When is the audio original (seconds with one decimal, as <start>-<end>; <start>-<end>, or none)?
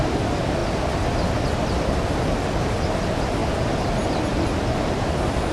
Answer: 0.0-5.5